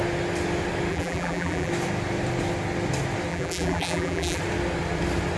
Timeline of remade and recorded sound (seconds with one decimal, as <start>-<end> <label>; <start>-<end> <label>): 0.0-0.9 recorded; 0.9-1.7 remade; 1.7-3.3 recorded; 3.3-4.4 remade; 4.4-5.4 recorded

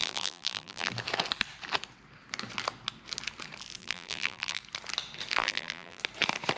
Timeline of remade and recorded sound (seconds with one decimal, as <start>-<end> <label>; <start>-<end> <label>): 0.0-0.9 remade; 0.9-3.8 recorded; 3.8-4.6 remade; 4.6-5.4 recorded; 5.4-6.0 remade; 6.0-6.6 recorded

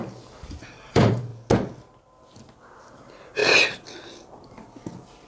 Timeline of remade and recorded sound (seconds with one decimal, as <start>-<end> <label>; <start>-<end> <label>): 0.0-1.3 remade; 1.3-2.9 recorded; 2.9-3.4 remade; 3.4-5.3 recorded